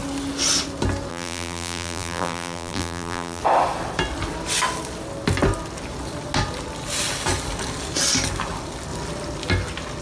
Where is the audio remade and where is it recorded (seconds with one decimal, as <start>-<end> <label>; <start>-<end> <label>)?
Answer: 0.0-1.1 recorded; 1.1-3.4 remade; 3.4-10.0 recorded